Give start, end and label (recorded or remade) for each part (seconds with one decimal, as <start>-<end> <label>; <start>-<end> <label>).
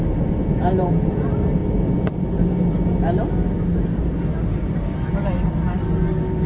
0.0-0.4 recorded; 0.4-1.2 remade; 1.2-6.5 recorded